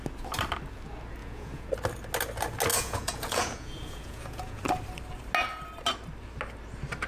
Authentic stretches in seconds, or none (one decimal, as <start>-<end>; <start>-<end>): 0.0-1.2; 1.7-2.7; 4.6-7.1

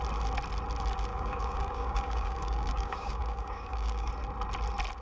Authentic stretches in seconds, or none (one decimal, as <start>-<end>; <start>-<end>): 0.0-1.1; 4.1-5.0

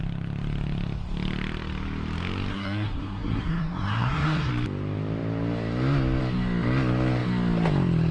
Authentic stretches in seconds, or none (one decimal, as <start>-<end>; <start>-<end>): 0.0-2.5; 4.5-8.1

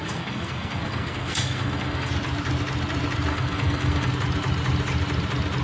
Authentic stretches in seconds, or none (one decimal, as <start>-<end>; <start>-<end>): 2.1-3.3; 4.1-5.6